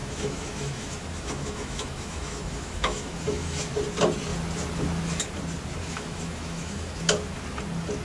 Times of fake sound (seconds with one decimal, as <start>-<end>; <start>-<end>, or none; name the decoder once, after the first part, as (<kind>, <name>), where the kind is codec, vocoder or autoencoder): 0.0-3.7 (autoencoder, DAC-VAE); 5.8-7.0